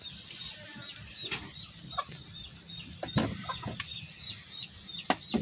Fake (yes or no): no